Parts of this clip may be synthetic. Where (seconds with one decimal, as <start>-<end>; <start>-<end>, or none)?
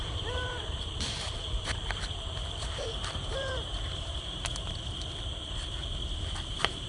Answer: 0.0-4.5; 6.5-6.9